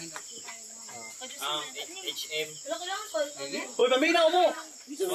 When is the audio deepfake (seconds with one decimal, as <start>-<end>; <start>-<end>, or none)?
3.8-5.1